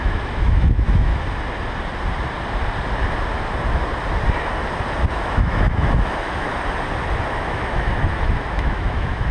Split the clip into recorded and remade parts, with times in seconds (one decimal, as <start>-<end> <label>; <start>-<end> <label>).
0.0-1.1 remade; 1.1-5.1 recorded; 5.1-6.5 remade; 6.5-7.3 recorded; 7.3-9.3 remade